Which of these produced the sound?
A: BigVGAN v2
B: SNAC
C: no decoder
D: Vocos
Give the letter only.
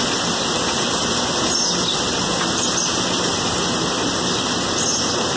C